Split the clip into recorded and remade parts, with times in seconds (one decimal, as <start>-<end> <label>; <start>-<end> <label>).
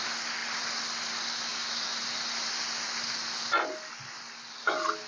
0.0-5.1 recorded